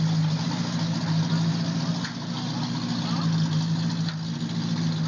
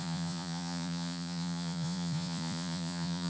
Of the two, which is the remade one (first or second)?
second